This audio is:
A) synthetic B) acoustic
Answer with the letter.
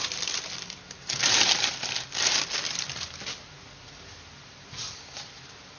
A